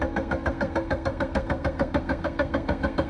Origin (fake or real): fake